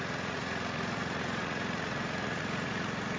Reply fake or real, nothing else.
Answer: fake